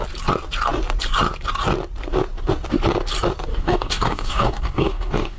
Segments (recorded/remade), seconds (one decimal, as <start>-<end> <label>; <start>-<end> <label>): 0.0-3.5 recorded; 3.5-5.4 remade

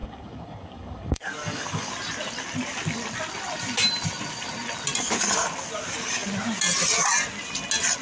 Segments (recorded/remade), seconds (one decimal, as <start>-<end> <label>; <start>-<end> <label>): 0.0-1.9 remade; 1.9-8.0 recorded

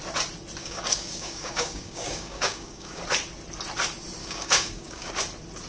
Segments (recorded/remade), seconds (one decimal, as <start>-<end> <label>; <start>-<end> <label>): 0.0-0.6 recorded; 0.6-3.0 remade; 3.0-4.2 recorded; 4.2-5.1 remade; 5.1-5.7 recorded

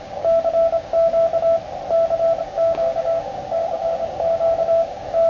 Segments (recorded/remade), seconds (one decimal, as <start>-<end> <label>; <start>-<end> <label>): 0.0-1.3 remade; 1.3-2.4 recorded; 2.4-5.3 remade